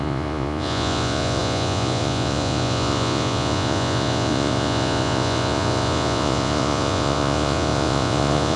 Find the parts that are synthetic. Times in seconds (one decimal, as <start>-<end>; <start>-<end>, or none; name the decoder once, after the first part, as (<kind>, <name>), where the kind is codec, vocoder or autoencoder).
0.0-8.6 (vocoder, Vocos)